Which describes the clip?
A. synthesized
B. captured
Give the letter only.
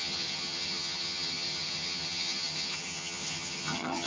A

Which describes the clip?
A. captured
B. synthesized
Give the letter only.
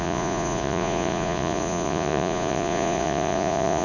B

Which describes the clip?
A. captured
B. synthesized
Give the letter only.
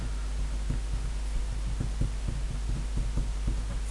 A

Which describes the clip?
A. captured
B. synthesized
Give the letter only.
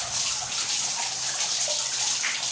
A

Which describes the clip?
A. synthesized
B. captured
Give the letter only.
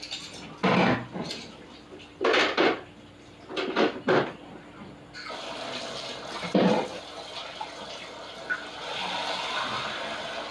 B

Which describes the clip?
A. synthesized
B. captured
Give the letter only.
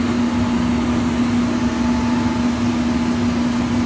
B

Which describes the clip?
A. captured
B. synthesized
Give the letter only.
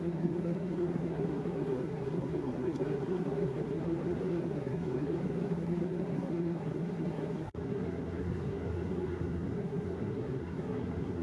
B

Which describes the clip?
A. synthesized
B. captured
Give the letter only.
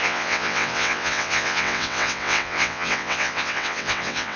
A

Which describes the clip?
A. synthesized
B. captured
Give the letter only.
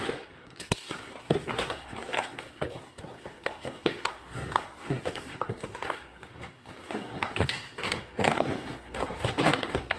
A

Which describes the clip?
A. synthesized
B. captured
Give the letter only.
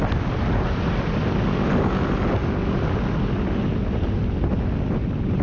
B